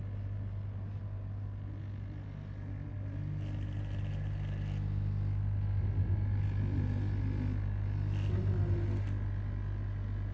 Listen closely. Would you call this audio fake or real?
real